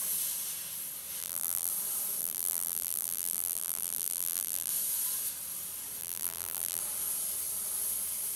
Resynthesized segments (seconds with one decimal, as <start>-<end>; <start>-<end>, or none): 1.2-1.7; 2.2-4.7; 6.0-6.8